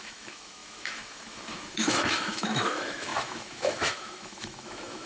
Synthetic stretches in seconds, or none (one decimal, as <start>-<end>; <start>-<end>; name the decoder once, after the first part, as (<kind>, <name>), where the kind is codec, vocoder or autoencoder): 0.0-5.1 (autoencoder, DAC-VAE)